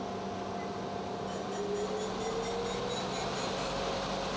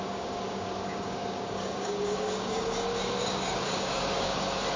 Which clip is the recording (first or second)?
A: first